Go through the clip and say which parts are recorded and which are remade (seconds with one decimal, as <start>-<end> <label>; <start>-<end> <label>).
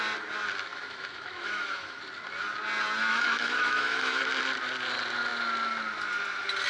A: 0.0-0.7 recorded; 0.7-2.0 remade; 2.0-3.1 recorded; 3.1-4.2 remade; 4.2-6.7 recorded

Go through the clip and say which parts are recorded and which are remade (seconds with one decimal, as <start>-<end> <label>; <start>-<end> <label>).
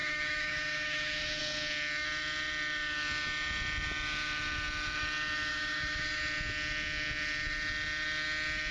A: 0.0-1.4 remade; 1.4-5.5 recorded; 5.5-6.2 remade; 6.2-8.7 recorded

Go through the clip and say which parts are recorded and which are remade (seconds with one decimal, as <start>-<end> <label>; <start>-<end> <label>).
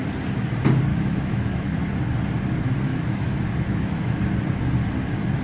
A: 0.0-0.9 recorded; 0.9-1.8 remade; 1.8-2.9 recorded; 2.9-4.2 remade; 4.2-5.4 recorded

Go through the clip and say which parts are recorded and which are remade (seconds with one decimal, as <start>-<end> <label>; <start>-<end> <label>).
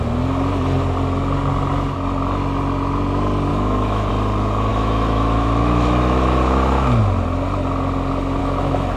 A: 0.0-3.5 recorded; 3.5-4.1 remade; 4.1-4.7 recorded; 4.7-7.0 remade; 7.0-8.4 recorded; 8.4-9.0 remade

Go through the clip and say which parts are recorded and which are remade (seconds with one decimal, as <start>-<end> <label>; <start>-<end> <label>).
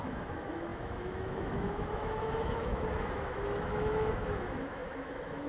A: 0.0-5.5 remade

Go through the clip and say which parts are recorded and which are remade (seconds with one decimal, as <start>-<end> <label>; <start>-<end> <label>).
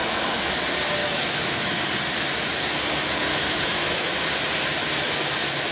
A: 0.0-0.6 remade; 0.6-1.0 recorded; 1.0-1.8 remade; 1.8-3.3 recorded; 3.3-4.1 remade; 4.1-5.7 recorded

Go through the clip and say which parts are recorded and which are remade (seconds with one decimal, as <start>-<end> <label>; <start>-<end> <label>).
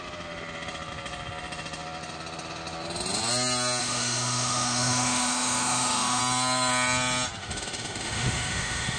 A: 0.0-3.8 recorded; 3.8-6.2 remade; 6.2-7.4 recorded; 7.4-9.0 remade